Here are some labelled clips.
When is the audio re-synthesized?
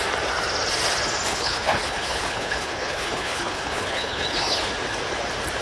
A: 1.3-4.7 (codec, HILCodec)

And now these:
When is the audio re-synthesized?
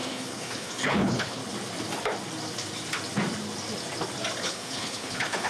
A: 0.0-1.4 (codec, HILCodec); 4.4-5.5